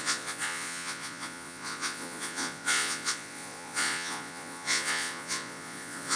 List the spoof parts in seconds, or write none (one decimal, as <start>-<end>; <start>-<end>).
0.0-6.2